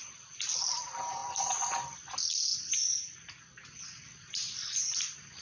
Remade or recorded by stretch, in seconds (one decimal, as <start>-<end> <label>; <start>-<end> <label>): 0.0-5.4 recorded